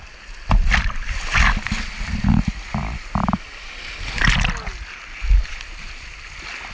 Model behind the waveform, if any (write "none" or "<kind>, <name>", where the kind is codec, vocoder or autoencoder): none